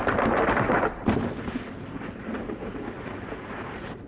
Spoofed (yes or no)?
no